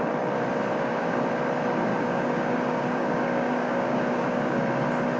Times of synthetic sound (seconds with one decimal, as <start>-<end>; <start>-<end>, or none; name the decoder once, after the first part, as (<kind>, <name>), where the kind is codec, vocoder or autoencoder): 0.7-1.2 (codec, DAC); 1.9-4.6